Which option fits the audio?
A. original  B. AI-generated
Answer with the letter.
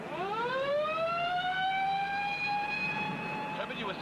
A